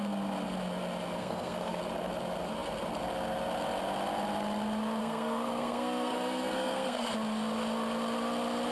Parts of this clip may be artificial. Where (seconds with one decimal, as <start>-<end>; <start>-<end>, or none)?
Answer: 1.2-1.8; 5.0-7.1